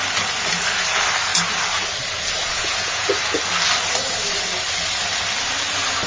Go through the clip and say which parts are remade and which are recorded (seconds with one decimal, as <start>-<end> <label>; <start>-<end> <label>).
0.0-2.4 recorded; 2.4-3.1 remade; 3.1-6.1 recorded